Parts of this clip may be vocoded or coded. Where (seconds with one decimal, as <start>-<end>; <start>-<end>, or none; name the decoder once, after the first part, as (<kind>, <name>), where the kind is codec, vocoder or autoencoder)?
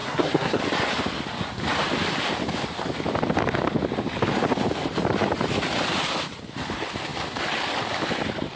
0.0-0.6 (codec, SNAC)